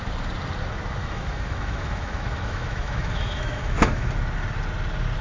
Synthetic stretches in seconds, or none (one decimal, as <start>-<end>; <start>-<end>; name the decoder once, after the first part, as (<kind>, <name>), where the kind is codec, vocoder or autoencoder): 1.0-4.1 (autoencoder, DAC-VAE)